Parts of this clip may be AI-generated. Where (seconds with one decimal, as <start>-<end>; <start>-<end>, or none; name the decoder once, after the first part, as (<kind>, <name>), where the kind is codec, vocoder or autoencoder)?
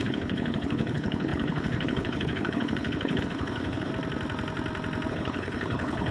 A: 0.0-3.9 (codec, HILCodec); 5.1-6.1